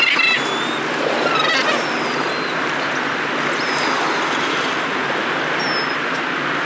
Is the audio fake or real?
real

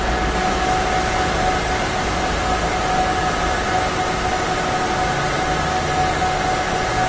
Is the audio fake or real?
real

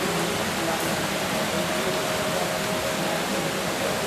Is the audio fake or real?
real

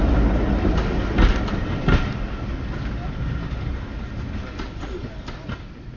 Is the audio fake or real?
real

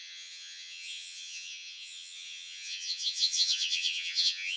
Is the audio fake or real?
fake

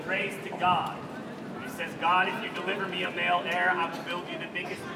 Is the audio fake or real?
real